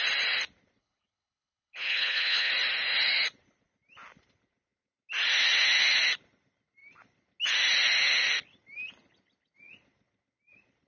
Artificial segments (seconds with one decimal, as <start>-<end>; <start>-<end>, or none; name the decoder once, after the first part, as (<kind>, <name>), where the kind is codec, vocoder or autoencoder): 0.8-2.5 (codec, HILCodec)